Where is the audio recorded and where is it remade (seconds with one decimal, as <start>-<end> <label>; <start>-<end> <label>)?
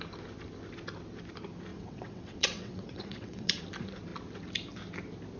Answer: 0.0-1.7 recorded; 1.7-3.6 remade; 3.6-5.4 recorded